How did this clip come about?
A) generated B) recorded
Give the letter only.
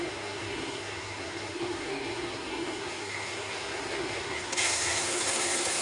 A